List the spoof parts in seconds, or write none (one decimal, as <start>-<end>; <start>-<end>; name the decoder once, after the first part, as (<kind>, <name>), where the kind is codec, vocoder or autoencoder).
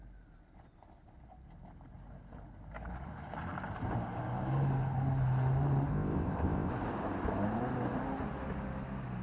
5.9-6.7 (codec, ZipCodec)